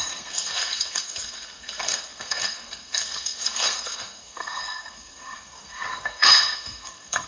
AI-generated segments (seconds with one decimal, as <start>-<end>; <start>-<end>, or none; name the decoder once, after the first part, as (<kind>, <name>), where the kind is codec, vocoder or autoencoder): 0.0-7.3 (codec, SNAC)